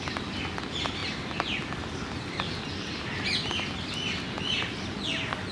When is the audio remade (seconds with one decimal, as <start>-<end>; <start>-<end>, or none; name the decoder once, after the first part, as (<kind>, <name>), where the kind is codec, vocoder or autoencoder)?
none